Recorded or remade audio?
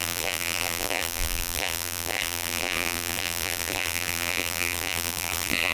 remade